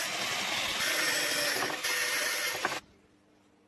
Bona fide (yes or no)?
yes